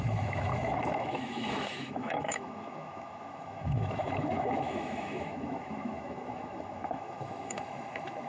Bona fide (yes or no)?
no